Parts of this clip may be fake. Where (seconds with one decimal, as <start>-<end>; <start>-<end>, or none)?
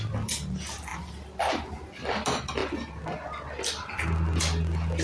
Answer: none